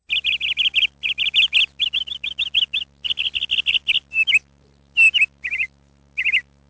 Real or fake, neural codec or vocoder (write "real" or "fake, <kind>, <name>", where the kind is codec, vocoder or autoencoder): real